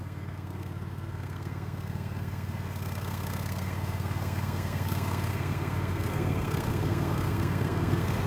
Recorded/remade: remade